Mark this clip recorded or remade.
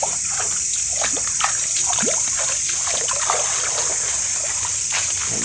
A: recorded